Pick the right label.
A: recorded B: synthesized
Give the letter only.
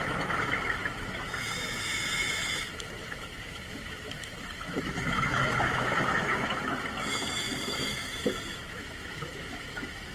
B